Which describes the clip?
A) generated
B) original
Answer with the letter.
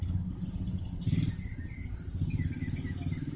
B